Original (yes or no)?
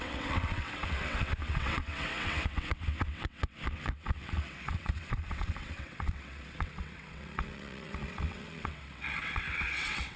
no